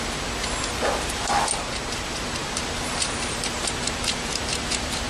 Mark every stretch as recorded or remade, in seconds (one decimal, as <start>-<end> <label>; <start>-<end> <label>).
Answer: 0.0-2.4 recorded; 2.4-5.1 remade